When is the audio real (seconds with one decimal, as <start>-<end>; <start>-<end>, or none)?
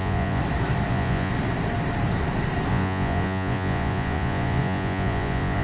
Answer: 0.4-0.9; 1.3-2.7